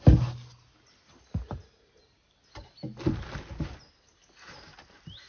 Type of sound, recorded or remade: recorded